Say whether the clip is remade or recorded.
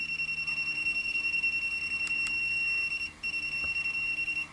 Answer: remade